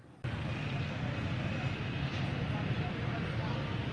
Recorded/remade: recorded